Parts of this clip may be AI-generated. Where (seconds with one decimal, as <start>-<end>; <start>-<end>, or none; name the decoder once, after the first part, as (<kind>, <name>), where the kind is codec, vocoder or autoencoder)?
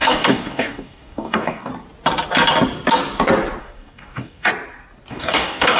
0.0-1.7 (codec, DAC); 3.6-4.5; 5.1-5.8